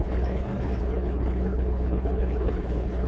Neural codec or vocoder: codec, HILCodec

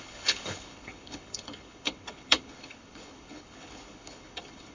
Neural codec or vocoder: codec, HILCodec